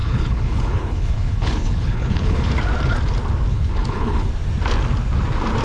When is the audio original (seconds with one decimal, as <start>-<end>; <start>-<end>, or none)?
2.5-3.5; 4.3-5.6